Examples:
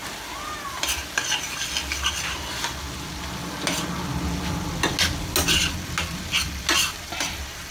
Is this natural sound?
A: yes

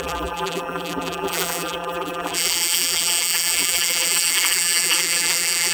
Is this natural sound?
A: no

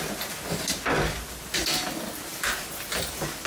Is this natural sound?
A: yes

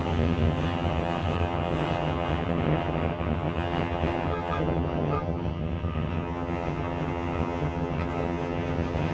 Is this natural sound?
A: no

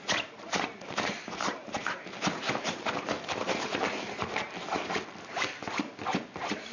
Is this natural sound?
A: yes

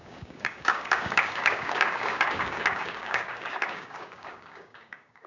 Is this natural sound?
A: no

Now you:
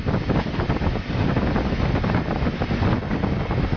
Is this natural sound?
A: yes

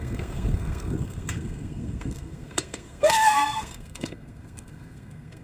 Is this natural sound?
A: no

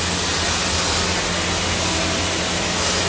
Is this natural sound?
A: yes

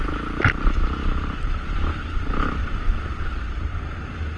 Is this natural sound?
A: yes